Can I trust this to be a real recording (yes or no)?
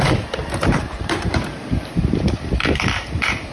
no